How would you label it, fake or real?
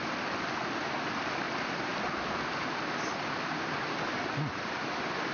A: real